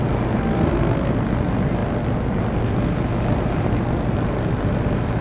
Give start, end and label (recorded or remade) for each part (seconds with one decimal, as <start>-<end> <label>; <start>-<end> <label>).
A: 0.0-0.4 recorded; 0.4-1.1 remade; 1.1-5.2 recorded